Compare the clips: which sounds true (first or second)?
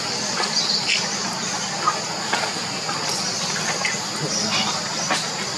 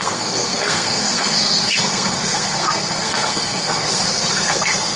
first